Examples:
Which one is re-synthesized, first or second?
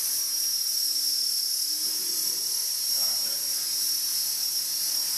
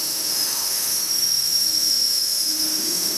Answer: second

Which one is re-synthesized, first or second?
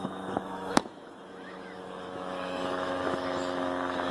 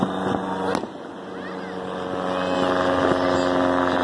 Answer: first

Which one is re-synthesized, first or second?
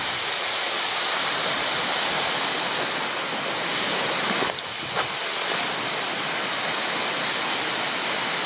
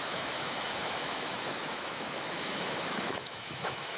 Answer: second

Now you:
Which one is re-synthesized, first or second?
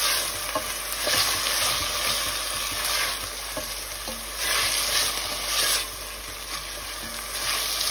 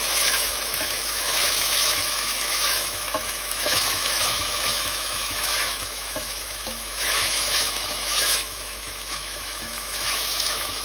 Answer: second